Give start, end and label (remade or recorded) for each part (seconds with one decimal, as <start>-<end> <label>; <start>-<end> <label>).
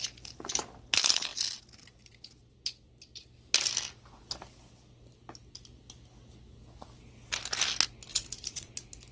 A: 0.0-8.1 recorded; 8.1-8.7 remade; 8.7-9.1 recorded